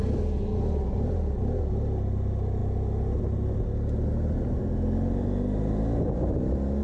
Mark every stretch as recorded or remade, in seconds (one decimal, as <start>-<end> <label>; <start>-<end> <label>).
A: 0.0-6.8 recorded